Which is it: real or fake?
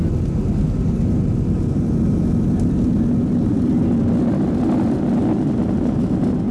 real